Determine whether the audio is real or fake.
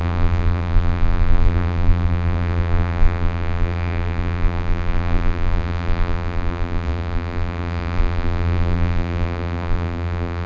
fake